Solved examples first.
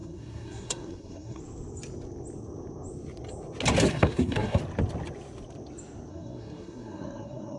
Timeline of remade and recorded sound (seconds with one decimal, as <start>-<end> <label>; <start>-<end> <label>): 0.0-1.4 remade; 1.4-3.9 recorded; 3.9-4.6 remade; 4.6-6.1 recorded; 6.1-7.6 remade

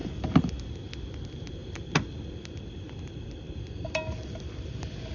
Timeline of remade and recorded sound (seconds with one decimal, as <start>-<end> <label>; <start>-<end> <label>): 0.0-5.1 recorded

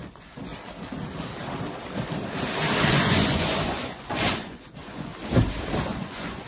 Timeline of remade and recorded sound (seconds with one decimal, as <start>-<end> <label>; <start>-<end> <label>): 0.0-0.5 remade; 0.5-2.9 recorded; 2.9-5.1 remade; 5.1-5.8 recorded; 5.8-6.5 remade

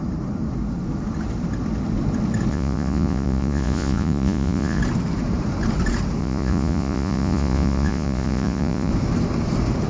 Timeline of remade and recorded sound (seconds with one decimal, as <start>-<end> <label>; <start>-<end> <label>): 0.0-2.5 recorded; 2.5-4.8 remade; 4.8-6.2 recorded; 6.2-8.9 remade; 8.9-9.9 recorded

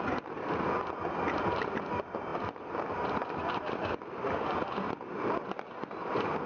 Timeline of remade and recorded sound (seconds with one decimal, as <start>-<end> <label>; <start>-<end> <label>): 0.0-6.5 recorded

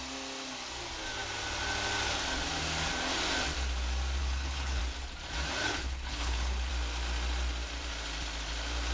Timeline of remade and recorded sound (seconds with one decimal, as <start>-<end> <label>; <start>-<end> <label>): 0.0-4.2 recorded; 4.2-4.8 remade; 4.8-5.6 recorded; 5.6-6.7 remade; 6.7-8.9 recorded

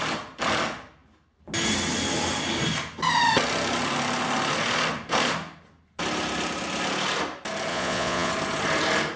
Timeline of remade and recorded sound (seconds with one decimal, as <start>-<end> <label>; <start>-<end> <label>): 0.0-7.7 recorded; 7.7-8.3 remade; 8.3-9.2 recorded

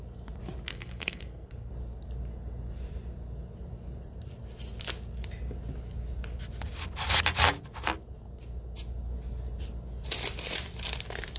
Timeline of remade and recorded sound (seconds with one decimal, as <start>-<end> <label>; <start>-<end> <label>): 0.0-0.7 recorded; 0.7-1.7 remade; 1.7-11.4 recorded